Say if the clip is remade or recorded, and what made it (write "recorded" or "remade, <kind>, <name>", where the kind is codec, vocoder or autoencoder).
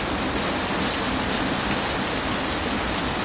recorded